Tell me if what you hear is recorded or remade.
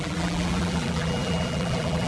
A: remade